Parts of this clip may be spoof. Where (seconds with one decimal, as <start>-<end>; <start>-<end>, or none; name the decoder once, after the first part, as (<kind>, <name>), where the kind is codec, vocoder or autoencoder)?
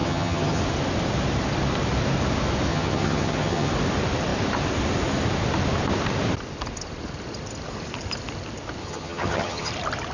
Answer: 0.0-0.6 (vocoder, HiFi-GAN); 2.7-3.7; 8.8-9.7